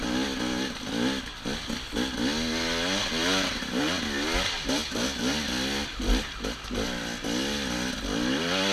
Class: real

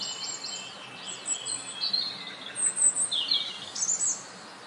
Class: real